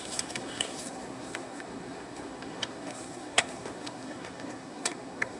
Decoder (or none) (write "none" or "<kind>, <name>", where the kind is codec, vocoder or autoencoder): codec, SNAC